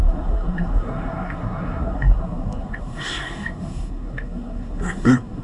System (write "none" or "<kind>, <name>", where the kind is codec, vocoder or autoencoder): codec, SNAC